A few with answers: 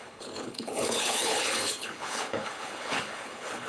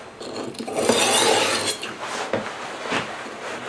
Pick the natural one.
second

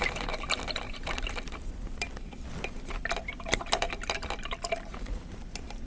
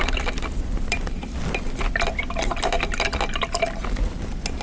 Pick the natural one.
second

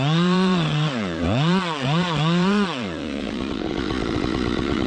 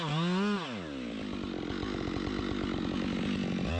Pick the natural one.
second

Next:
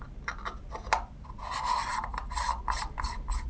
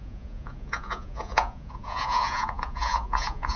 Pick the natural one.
first